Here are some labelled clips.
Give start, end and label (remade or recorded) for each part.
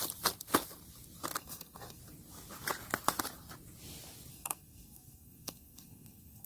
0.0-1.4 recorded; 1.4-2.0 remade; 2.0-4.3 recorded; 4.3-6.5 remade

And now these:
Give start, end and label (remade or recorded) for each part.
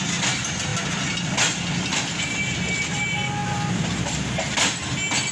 0.0-5.3 recorded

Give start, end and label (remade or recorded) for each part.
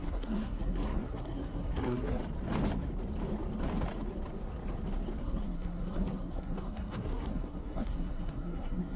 0.0-2.2 remade; 2.2-5.2 recorded; 5.2-9.0 remade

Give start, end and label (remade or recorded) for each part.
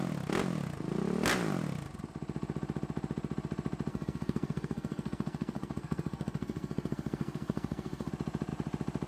0.0-3.9 recorded; 3.9-8.1 remade; 8.1-9.1 recorded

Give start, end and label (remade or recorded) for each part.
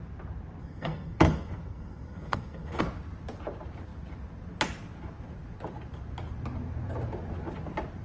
0.0-0.6 recorded; 0.6-2.8 remade; 2.8-8.0 recorded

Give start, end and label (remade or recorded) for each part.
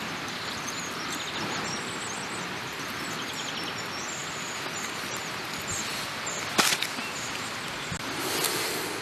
0.0-9.0 recorded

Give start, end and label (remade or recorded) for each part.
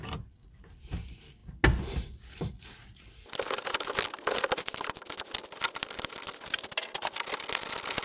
0.0-8.0 recorded